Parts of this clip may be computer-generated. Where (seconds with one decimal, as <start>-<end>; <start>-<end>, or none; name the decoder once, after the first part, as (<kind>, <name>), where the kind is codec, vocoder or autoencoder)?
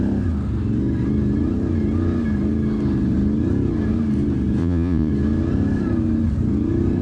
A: 4.6-5.1 (vocoder, Vocos)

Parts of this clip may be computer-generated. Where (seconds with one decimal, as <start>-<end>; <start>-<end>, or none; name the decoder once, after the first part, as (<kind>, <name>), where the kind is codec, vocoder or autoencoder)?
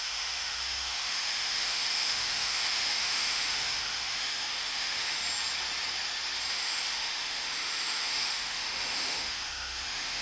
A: 0.0-5.2 (autoencoder, DAC-VAE); 6.5-10.2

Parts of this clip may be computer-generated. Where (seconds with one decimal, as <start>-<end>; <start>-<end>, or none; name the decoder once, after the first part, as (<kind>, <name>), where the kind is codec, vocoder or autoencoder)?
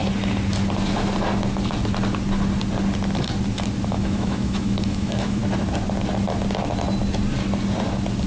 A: 3.9-5.4 (autoencoder, DAC-VAE)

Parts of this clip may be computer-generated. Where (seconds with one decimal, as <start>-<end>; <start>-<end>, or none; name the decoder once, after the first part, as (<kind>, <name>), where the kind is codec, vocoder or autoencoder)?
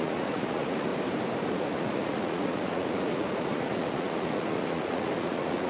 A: 0.0-0.9 (vocoder, Vocos); 1.5-5.7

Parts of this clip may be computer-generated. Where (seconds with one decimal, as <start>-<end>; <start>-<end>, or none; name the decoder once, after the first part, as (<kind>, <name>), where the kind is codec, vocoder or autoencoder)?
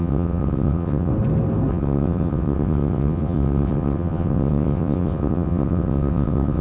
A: 0.0-1.1 (vocoder, WaveNeXt); 1.7-6.6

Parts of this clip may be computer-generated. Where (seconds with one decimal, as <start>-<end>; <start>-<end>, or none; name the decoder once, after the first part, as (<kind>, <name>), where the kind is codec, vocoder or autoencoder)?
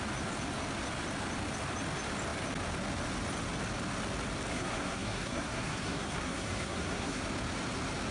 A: 4.5-7.2 (codec, SNAC)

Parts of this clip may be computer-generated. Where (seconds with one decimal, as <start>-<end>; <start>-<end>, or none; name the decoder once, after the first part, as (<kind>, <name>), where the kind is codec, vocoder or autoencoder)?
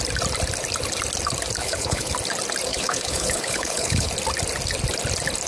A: 1.6-2.1 (codec, HILCodec); 2.7-4.1